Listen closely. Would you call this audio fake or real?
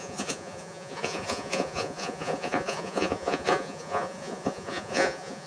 fake